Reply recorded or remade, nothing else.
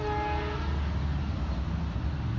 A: recorded